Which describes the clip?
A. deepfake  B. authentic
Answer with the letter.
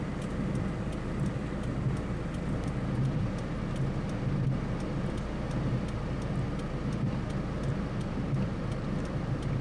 B